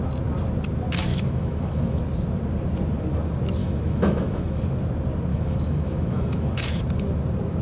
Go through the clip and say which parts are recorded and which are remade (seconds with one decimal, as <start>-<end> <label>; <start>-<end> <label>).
0.0-1.1 recorded; 1.1-2.0 remade; 2.0-3.6 recorded; 3.6-4.6 remade; 4.6-5.3 recorded; 5.3-6.8 remade; 6.8-7.6 recorded